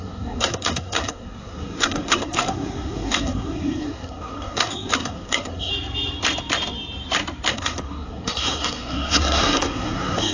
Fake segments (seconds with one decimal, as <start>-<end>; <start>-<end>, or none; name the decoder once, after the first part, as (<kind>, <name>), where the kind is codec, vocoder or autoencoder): 0.0-5.7 (codec, SNAC); 7.5-10.3